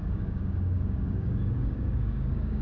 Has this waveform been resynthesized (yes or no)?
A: yes